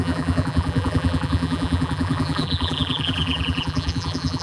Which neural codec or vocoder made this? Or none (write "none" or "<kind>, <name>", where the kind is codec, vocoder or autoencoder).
vocoder, BigVGAN v2